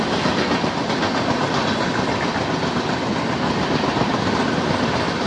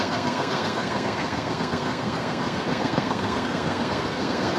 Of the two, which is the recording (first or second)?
first